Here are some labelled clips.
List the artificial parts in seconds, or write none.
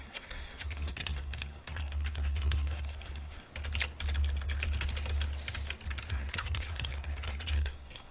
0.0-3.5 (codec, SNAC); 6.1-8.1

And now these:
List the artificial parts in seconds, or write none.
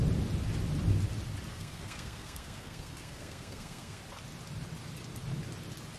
1.5-4.0 (codec, SNAC)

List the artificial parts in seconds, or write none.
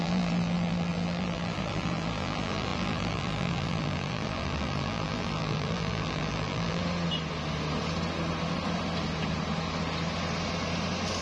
0.0-6.8 (vocoder, BigVGAN v2)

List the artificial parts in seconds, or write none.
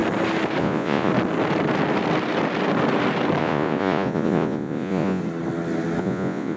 0.6-1.1 (vocoder, Vocos); 3.4-5.2; 6.0-6.6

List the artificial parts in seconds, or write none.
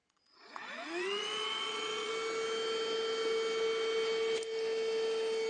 0.0-2.1 (vocoder, Vocos)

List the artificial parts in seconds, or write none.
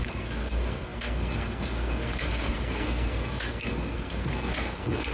0.0-5.1 (codec, SNAC)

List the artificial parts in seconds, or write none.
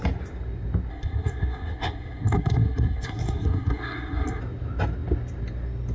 0.9-4.4 (codec, SNAC)